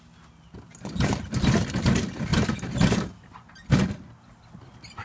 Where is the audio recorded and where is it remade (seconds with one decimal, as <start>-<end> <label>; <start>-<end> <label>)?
0.0-2.3 recorded; 2.3-3.1 remade; 3.1-5.0 recorded